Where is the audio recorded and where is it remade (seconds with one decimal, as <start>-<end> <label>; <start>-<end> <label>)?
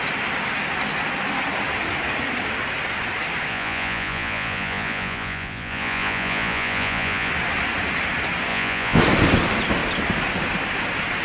0.0-3.5 recorded; 3.5-7.3 remade; 7.3-8.5 recorded; 8.5-9.0 remade; 9.0-11.2 recorded